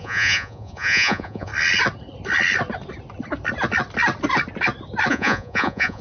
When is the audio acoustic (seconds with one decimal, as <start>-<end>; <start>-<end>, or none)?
1.5-5.1